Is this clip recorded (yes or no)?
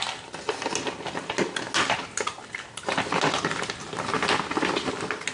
yes